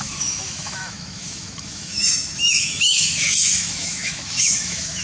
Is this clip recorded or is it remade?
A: remade